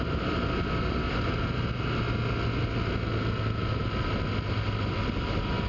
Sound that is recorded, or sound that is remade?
recorded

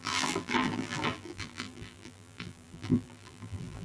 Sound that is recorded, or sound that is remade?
remade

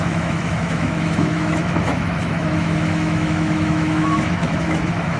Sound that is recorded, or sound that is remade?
remade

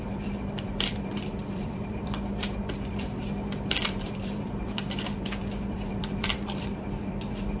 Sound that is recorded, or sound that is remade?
remade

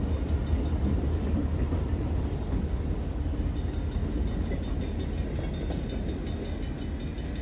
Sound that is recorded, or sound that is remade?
recorded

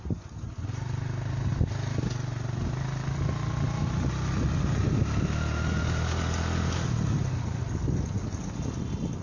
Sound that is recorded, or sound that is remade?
recorded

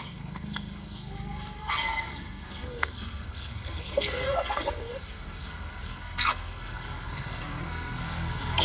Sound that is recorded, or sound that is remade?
remade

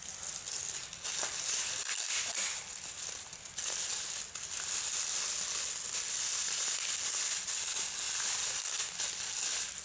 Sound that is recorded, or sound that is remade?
recorded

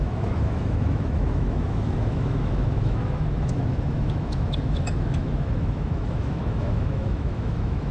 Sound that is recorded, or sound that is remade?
remade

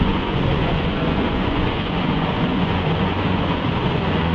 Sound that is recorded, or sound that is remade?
remade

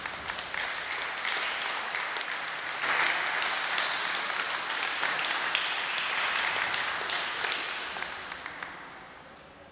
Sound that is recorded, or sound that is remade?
recorded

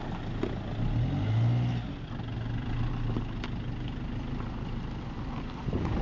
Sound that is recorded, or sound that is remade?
recorded